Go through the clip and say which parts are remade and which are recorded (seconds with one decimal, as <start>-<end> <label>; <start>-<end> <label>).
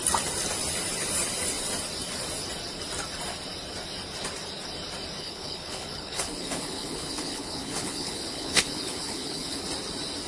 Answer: 0.0-5.2 recorded; 5.2-9.6 remade; 9.6-10.3 recorded